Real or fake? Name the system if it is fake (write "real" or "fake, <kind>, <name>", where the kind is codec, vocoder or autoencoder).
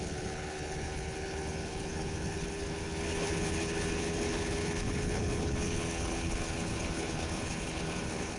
fake, codec, HILCodec